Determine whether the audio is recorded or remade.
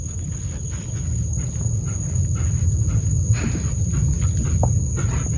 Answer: recorded